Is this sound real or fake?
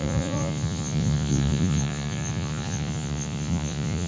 fake